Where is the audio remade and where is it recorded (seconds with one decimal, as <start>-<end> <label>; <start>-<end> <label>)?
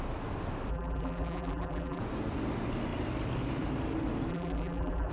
0.0-0.7 recorded; 0.7-2.0 remade; 2.0-4.3 recorded; 4.3-5.1 remade